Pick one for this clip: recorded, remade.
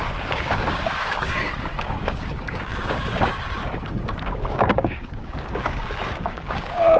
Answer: remade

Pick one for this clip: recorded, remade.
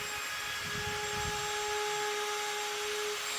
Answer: recorded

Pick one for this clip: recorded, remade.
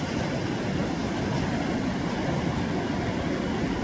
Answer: recorded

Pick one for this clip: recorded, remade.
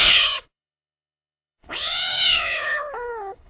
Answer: remade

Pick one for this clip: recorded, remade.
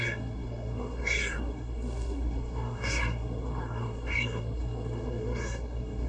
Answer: remade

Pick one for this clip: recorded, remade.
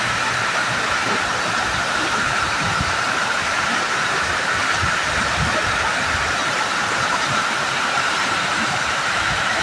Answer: remade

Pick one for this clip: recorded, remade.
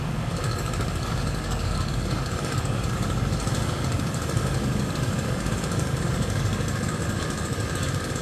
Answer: remade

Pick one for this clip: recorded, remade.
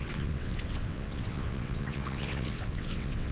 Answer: remade